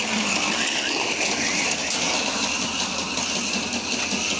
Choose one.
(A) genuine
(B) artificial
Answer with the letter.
A